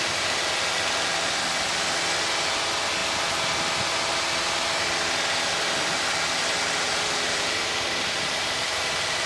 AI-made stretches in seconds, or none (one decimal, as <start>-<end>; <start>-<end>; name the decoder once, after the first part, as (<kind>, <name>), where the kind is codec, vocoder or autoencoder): 6.4-8.8 (vocoder, BigVGAN v2)